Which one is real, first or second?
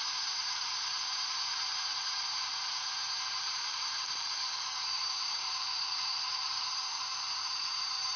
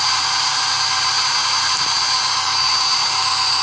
second